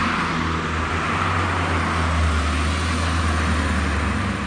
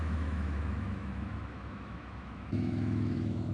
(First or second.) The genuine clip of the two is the first